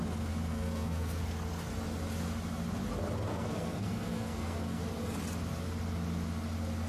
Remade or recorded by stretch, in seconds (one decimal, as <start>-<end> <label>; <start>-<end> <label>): 0.0-0.5 recorded; 0.5-1.2 remade; 1.2-3.3 recorded; 3.3-4.8 remade; 4.8-6.9 recorded